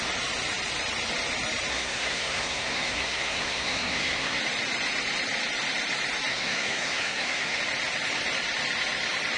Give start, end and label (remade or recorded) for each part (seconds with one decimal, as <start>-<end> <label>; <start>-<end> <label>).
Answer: 0.0-1.7 recorded; 1.7-4.4 remade; 4.4-6.3 recorded; 6.3-7.6 remade; 7.6-9.4 recorded